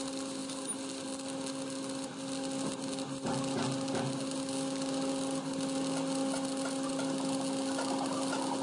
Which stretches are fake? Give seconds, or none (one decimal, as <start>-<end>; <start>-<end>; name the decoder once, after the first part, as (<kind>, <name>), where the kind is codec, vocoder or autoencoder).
none